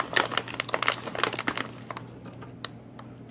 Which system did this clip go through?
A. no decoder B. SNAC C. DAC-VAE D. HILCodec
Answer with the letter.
A